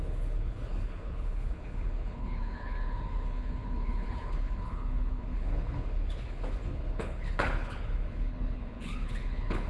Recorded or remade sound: remade